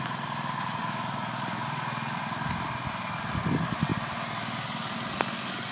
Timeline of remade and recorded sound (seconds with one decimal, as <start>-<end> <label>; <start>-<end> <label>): 0.0-5.7 recorded